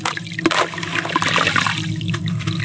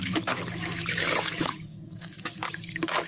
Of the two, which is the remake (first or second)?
second